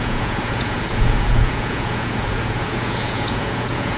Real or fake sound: fake